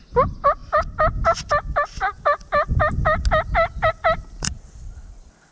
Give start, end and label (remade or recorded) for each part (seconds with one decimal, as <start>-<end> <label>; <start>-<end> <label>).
0.0-5.5 recorded